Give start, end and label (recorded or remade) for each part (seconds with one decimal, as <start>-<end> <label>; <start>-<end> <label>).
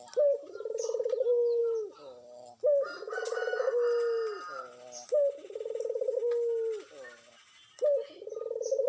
0.0-8.9 recorded